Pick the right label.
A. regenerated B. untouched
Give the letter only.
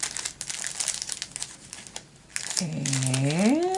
B